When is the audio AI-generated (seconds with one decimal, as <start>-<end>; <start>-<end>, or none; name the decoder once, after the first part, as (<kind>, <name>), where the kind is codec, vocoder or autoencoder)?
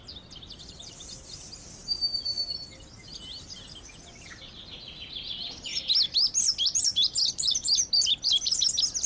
5.7-8.6 (vocoder, BigVGAN v2)